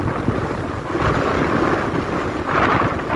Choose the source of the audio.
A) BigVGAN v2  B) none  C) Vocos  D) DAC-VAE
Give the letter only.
B